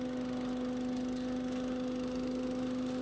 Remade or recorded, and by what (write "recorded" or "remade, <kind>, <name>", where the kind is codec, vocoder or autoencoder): recorded